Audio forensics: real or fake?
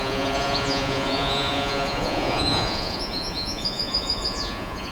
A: fake